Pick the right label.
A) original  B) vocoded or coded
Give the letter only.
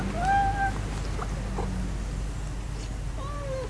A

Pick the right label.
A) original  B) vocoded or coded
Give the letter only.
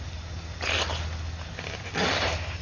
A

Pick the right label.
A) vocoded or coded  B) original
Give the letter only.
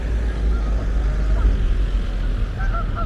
B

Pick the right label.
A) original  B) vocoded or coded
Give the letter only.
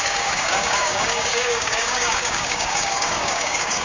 B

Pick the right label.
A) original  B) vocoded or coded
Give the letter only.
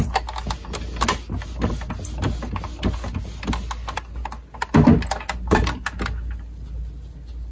A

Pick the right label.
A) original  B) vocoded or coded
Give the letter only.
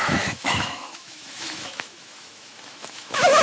B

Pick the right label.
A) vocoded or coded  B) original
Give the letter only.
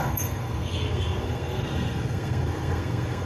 A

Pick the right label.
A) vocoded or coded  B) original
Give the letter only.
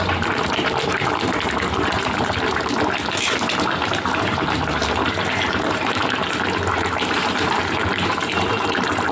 A